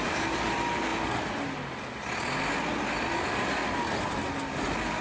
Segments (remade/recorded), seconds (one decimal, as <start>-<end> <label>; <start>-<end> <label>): 0.0-0.9 remade; 0.9-2.6 recorded; 2.6-3.6 remade; 3.6-5.0 recorded